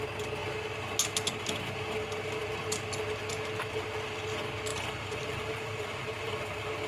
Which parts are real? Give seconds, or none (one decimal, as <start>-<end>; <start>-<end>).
0.0-4.7; 6.3-6.9